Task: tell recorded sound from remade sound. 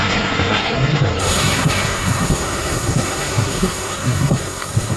remade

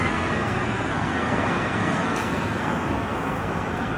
remade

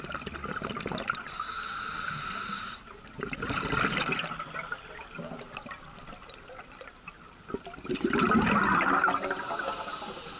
recorded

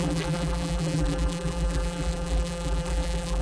remade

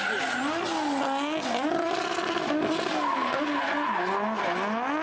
recorded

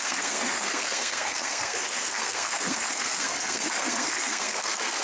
remade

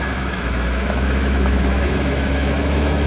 remade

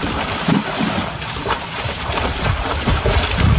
remade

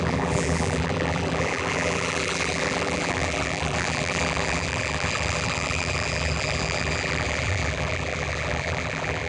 remade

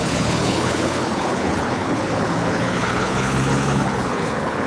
remade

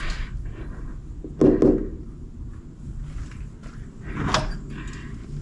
recorded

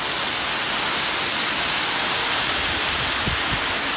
recorded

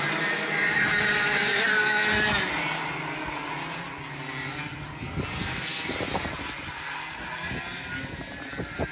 recorded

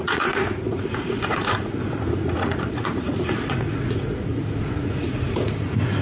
remade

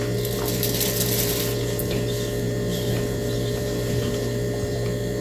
recorded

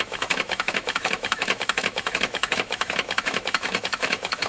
remade